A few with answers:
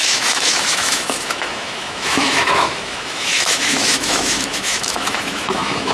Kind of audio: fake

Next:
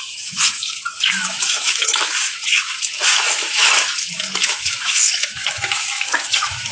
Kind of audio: fake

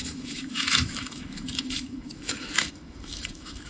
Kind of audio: fake